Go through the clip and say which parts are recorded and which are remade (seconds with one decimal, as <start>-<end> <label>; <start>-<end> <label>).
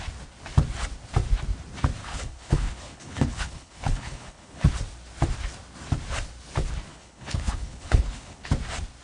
0.0-2.0 recorded; 2.0-4.7 remade; 4.7-6.9 recorded; 6.9-8.5 remade; 8.5-9.0 recorded